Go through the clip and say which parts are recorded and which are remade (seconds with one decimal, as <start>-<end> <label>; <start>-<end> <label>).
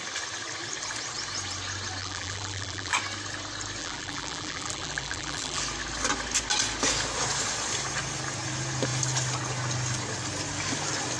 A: 0.0-2.0 recorded; 2.0-2.9 remade; 2.9-3.8 recorded; 3.8-5.6 remade; 5.6-11.2 recorded